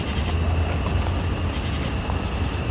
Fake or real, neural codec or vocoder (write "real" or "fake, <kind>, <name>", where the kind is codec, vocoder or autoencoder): real